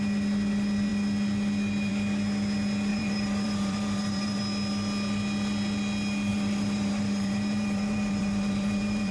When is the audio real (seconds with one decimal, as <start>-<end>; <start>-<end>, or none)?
0.0-2.9; 4.4-6.3